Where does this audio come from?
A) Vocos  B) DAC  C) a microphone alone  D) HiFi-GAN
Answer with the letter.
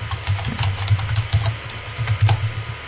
C